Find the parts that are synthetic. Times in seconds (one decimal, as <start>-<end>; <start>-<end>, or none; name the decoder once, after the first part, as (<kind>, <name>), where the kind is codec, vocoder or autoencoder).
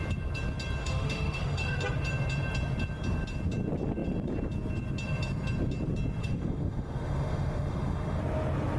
0.8-1.8 (autoencoder, DAC-VAE); 6.2-8.2